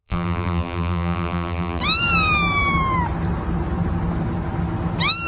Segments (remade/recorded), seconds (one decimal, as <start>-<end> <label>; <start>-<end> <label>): 0.0-1.8 remade; 1.8-5.3 recorded